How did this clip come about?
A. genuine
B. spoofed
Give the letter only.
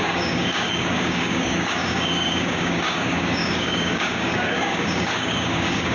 B